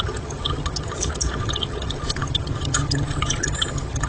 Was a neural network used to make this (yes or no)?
yes